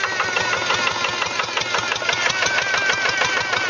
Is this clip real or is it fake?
real